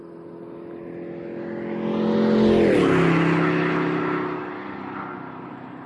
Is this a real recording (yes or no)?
yes